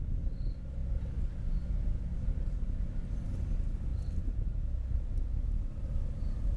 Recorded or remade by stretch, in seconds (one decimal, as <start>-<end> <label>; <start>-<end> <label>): 0.0-6.6 recorded

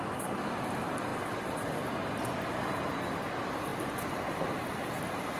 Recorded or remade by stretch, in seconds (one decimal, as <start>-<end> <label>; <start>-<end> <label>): 0.0-5.4 recorded

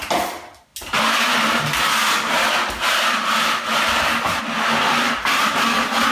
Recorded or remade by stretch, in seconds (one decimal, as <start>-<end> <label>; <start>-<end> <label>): 0.0-6.1 recorded

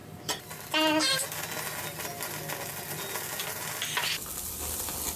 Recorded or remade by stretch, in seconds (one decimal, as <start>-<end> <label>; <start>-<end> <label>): 0.0-0.5 remade; 0.5-5.2 recorded